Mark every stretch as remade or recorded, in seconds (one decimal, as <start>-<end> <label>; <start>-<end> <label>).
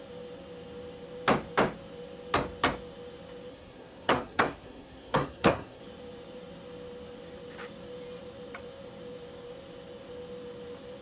0.0-3.5 recorded; 3.5-5.8 remade; 5.8-11.0 recorded